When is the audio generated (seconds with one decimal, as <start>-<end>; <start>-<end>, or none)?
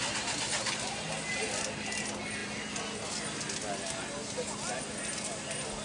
none